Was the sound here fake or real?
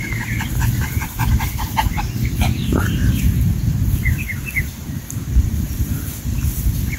real